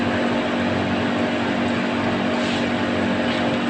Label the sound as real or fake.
real